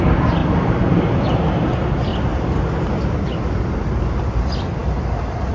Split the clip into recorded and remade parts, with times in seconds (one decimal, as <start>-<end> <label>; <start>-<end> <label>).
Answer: 0.0-5.5 recorded